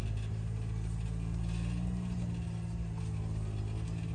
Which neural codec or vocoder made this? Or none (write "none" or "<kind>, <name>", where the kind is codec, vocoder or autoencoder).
none